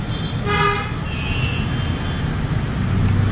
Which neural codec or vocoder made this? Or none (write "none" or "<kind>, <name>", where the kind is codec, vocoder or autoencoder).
none